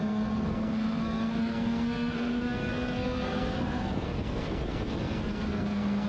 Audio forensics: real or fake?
fake